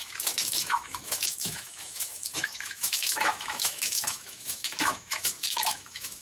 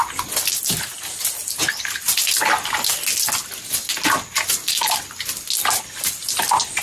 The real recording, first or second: second